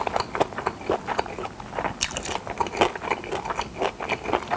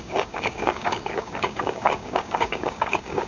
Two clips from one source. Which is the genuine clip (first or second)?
first